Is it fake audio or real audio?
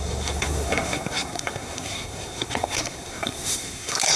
fake